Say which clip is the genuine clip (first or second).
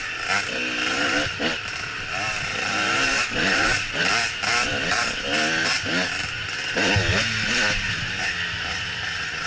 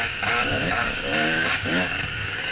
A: first